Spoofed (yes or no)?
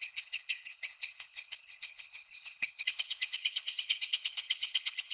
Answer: yes